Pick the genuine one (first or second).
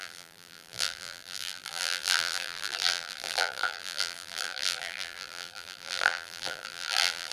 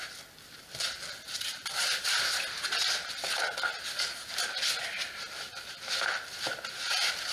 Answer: second